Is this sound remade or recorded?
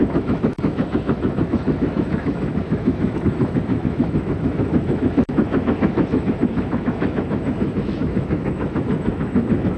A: remade